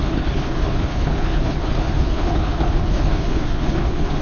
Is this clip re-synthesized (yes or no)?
yes